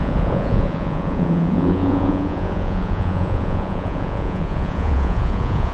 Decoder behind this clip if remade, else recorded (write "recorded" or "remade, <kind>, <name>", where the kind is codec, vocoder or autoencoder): remade, vocoder, Vocos